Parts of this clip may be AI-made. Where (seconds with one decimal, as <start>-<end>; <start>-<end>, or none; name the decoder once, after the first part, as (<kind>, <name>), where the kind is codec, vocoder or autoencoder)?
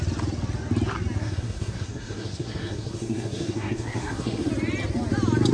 1.2-4.5 (codec, SNAC)